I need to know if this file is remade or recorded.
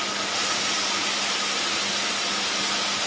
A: recorded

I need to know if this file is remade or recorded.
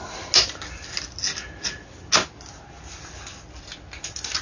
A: recorded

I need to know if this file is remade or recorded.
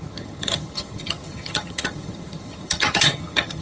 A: remade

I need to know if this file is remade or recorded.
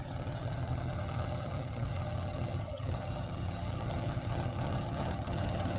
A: remade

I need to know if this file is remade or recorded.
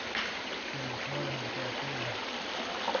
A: recorded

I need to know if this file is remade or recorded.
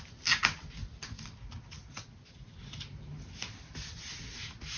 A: recorded